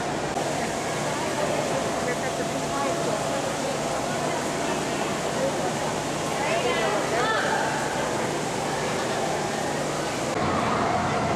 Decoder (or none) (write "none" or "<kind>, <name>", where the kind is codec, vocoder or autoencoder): none